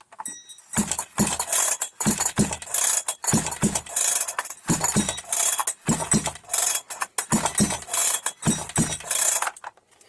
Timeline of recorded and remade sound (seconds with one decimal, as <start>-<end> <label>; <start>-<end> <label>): 0.0-10.1 recorded